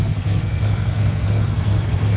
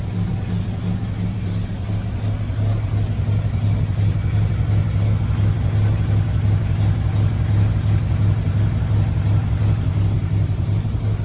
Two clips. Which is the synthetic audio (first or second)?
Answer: first